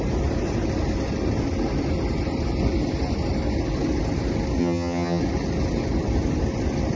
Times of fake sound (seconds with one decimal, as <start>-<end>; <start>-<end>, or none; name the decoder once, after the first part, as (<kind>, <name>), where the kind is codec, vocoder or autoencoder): 4.6-5.2 (vocoder, HiFi-GAN)